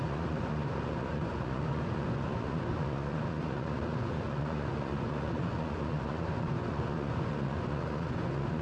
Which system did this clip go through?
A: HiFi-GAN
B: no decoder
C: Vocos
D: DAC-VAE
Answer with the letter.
C